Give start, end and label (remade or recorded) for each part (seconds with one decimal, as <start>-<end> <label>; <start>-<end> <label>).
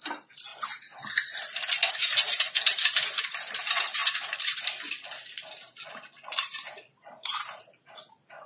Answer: 0.0-0.5 remade; 0.5-1.9 recorded; 1.9-8.5 remade